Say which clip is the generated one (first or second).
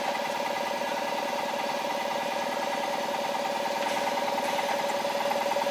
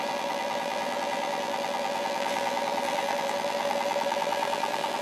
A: second